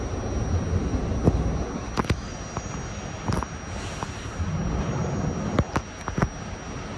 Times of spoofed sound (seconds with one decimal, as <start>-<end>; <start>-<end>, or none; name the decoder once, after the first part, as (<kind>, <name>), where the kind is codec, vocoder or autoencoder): none